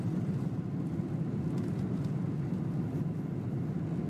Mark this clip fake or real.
real